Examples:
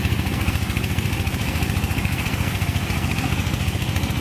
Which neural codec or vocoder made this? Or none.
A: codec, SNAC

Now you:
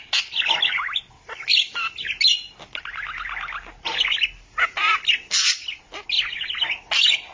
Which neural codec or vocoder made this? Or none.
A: none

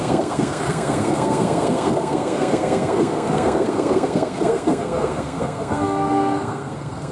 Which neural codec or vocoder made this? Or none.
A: codec, SNAC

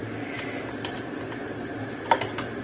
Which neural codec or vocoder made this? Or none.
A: none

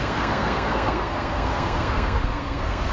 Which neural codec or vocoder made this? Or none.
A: codec, SNAC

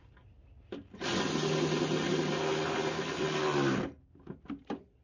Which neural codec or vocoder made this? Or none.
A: none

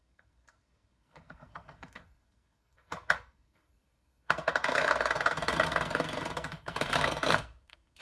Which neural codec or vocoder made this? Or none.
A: codec, SNAC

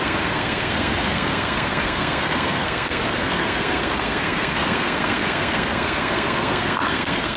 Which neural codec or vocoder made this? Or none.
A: codec, SNAC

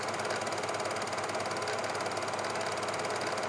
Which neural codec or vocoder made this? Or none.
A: none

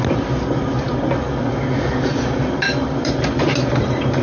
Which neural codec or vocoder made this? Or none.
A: none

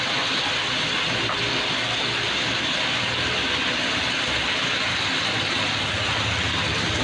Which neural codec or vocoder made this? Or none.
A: none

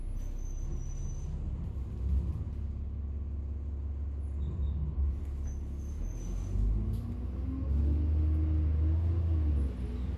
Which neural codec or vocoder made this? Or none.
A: none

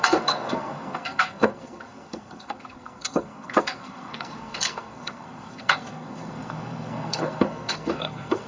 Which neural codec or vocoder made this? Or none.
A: codec, SNAC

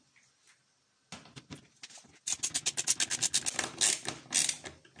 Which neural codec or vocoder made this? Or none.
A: none